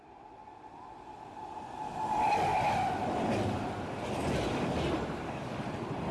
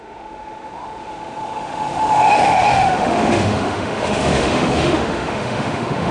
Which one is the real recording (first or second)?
first